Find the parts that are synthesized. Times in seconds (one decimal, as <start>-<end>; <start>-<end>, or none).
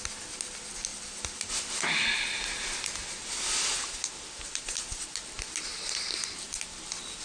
none